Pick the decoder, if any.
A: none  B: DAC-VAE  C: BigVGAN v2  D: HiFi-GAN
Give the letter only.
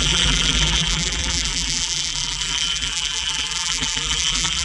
C